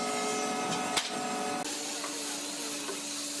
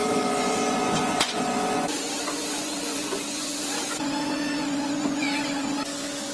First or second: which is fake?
second